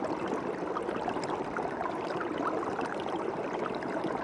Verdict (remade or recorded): recorded